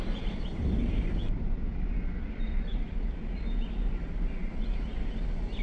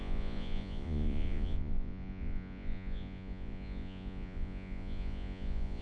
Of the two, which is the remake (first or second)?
second